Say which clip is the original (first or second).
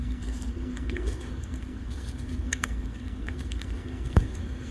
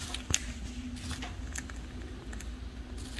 second